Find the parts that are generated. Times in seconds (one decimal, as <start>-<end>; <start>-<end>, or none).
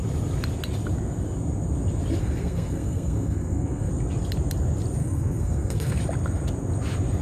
2.2-3.9; 5.0-6.0